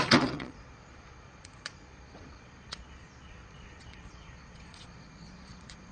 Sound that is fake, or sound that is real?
fake